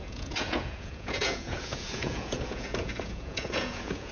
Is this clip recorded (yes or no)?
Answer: no